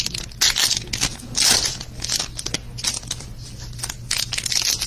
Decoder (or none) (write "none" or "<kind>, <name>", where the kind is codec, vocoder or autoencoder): none